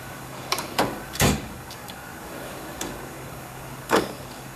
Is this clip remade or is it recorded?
remade